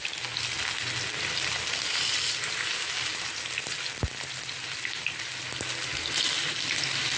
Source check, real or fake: real